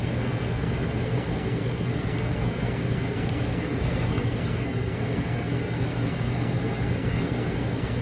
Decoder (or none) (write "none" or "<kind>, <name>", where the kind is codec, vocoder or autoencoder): codec, SNAC